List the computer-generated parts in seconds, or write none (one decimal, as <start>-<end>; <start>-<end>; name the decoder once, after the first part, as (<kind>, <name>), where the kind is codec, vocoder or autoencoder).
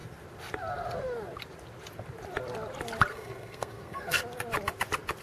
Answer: 3.1-4.2 (codec, SNAC)